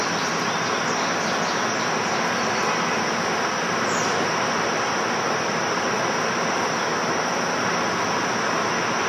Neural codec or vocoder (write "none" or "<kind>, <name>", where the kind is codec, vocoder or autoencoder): none